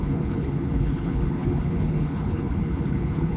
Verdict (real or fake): fake